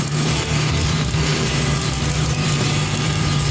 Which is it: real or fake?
fake